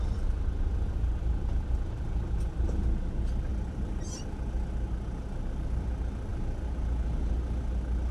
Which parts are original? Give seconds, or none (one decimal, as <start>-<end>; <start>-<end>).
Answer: 0.0-8.1